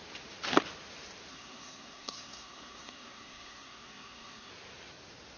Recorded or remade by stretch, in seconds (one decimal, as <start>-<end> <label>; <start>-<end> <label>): 0.0-1.3 recorded; 1.3-4.5 remade; 4.5-5.4 recorded